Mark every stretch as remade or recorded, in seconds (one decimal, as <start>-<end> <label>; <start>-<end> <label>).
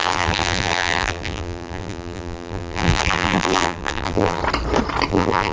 0.0-4.4 remade; 4.4-5.1 recorded; 5.1-5.5 remade